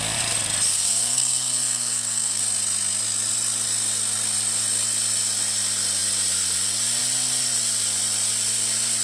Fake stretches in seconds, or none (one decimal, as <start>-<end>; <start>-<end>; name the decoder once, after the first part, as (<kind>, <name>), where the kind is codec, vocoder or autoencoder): 0.7-2.4 (codec, SNAC)

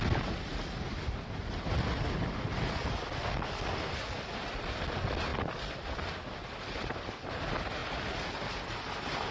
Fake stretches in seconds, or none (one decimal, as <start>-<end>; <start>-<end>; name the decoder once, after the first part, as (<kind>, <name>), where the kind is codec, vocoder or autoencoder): none

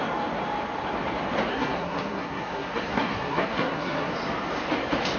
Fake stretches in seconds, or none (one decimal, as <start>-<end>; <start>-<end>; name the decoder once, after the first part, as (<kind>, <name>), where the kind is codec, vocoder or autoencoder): 1.5-4.1 (codec, SNAC)